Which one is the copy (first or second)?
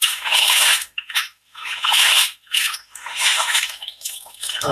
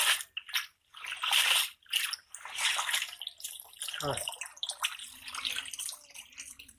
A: first